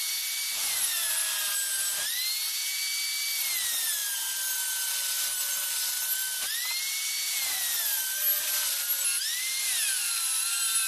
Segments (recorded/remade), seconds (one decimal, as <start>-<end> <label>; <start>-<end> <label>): 0.0-10.9 recorded

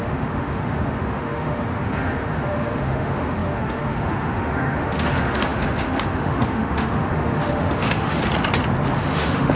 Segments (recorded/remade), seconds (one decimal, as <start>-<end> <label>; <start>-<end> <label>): 0.0-8.2 remade; 8.2-9.0 recorded; 9.0-9.6 remade